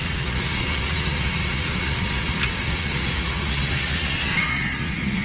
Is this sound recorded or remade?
remade